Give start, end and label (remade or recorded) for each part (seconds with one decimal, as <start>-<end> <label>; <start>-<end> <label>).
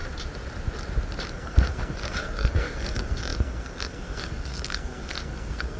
0.0-1.3 recorded; 1.3-5.8 remade